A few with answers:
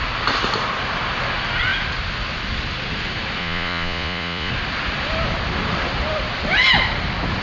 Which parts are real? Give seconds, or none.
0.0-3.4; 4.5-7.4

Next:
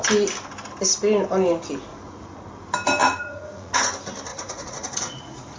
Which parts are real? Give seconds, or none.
0.0-1.9; 2.5-3.0; 3.9-4.3

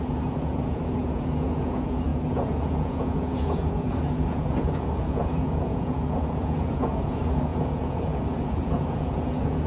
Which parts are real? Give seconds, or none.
none

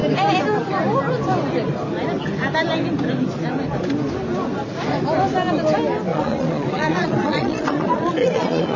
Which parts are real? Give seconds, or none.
0.0-6.1